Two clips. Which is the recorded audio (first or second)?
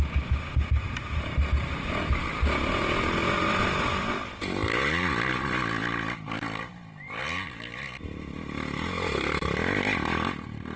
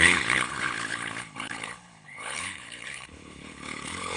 first